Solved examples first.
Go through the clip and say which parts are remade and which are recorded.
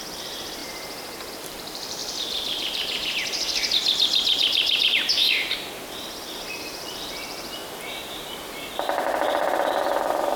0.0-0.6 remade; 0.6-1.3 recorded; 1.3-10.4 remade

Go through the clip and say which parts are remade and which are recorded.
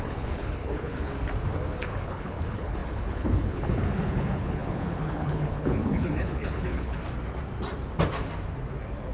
0.0-1.1 remade; 1.1-1.9 recorded; 1.9-7.0 remade; 7.0-9.1 recorded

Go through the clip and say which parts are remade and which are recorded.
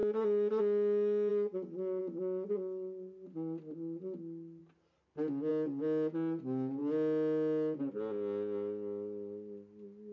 0.0-10.1 recorded